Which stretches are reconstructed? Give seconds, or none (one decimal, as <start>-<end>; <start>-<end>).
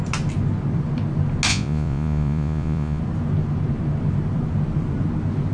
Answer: 1.5-3.0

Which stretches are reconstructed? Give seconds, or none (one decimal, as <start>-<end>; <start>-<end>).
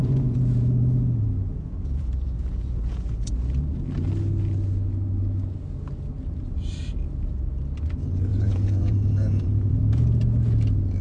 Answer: 0.0-3.3; 8.3-10.4